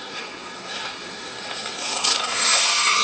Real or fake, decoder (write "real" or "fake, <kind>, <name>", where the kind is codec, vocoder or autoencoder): fake, codec, SNAC